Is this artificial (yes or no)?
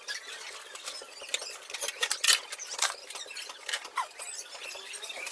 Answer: no